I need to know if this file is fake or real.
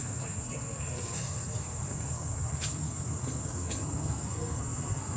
fake